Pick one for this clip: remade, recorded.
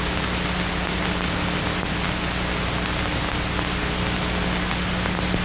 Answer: recorded